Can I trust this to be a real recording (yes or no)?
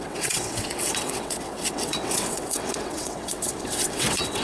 no